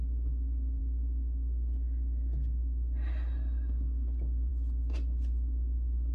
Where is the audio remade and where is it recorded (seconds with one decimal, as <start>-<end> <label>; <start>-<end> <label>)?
0.0-6.1 recorded